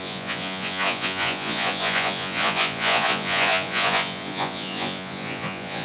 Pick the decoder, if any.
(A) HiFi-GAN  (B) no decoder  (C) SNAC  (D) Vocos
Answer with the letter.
D